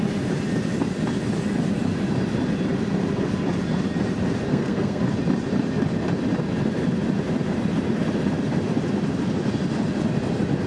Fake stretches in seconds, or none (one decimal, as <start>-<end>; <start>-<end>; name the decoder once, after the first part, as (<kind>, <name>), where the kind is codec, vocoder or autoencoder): 4.5-5.0 (codec, SNAC)